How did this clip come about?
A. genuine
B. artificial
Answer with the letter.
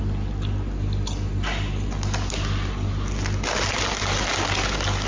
A